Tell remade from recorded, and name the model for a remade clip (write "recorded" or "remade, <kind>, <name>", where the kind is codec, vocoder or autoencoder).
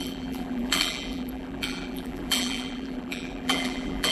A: remade, vocoder, BigVGAN v2